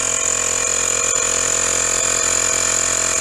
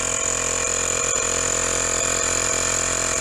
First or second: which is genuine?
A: first